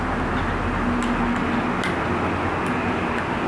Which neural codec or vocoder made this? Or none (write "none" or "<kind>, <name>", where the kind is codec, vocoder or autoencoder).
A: none